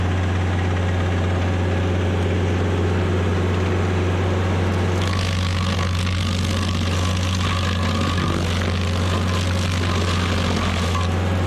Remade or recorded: recorded